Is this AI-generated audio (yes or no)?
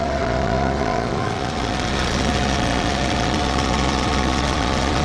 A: yes